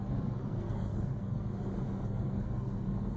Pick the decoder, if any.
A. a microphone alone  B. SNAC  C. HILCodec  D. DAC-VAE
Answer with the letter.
B